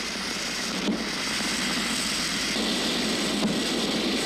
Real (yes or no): yes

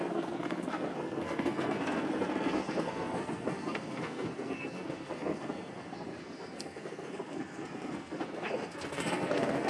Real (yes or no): no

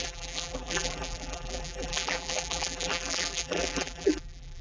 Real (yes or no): no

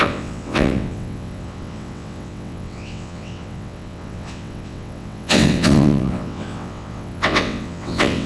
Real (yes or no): no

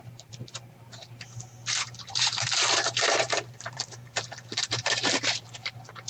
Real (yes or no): no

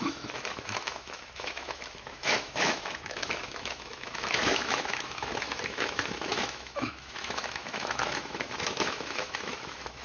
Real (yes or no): no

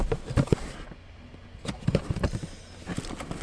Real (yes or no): yes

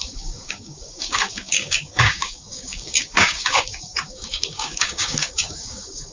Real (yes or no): no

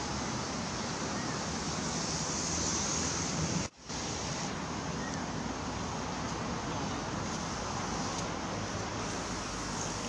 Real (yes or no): yes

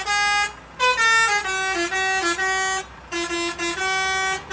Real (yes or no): yes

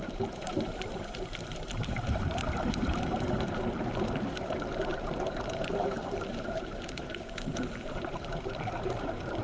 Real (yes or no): no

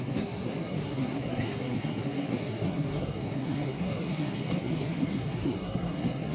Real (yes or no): no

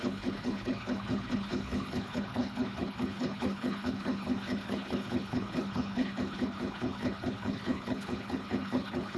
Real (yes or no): no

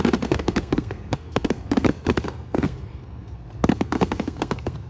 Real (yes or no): no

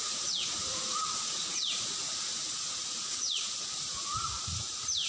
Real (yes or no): no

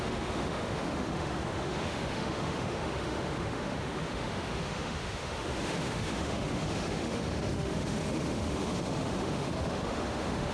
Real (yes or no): no